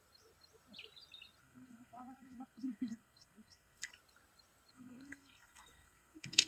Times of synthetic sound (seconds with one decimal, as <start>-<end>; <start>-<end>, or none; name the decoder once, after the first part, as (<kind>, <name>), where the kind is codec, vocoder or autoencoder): 1.4-3.9 (codec, SNAC); 4.7-6.5